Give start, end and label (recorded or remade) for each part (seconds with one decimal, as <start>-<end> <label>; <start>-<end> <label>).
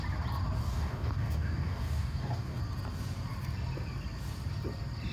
0.0-0.6 recorded; 0.6-2.6 remade; 2.6-5.1 recorded